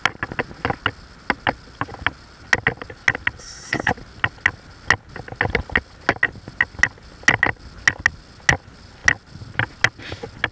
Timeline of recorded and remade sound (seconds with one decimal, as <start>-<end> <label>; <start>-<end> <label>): 0.0-3.4 recorded; 3.4-3.9 remade; 3.9-10.5 recorded